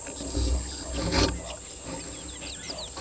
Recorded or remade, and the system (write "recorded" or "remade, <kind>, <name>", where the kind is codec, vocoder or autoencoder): recorded